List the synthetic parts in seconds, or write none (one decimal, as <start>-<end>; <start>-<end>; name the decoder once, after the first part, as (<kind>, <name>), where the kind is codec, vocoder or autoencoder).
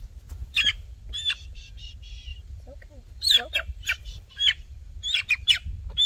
0.4-1.9 (vocoder, BigVGAN v2); 2.3-6.1